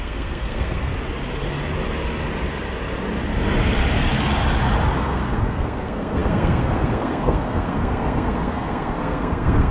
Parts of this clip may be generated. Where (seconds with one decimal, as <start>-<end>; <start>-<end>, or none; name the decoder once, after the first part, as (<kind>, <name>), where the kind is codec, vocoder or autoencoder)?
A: 0.0-0.9 (codec, SNAC); 5.0-9.7